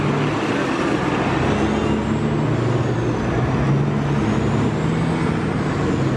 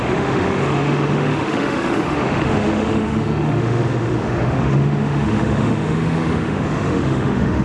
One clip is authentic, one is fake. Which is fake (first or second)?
second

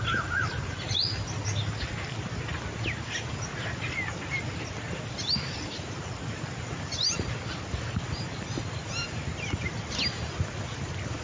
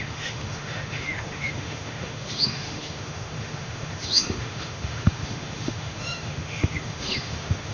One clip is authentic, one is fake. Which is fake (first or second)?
second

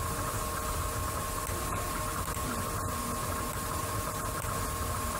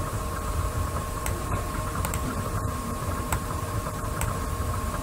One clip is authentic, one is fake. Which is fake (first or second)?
second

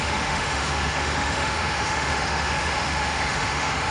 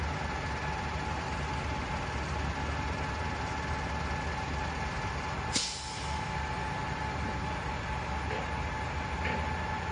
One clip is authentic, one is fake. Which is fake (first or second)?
first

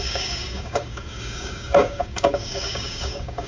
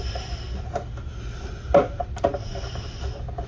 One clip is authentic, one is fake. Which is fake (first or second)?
first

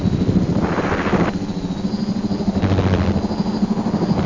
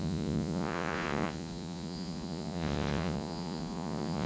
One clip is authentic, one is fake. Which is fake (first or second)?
second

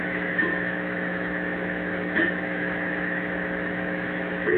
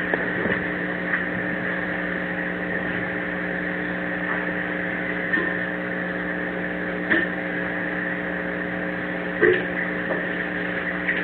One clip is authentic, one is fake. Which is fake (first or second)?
first